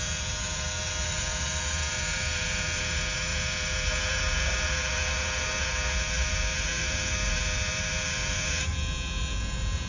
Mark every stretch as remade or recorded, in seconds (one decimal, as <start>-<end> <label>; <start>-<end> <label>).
0.0-9.9 remade